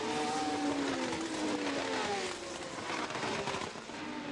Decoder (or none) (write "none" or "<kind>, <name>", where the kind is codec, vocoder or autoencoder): none